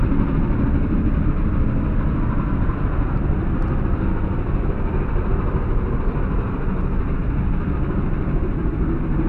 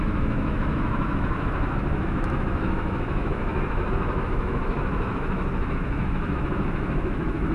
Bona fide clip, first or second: first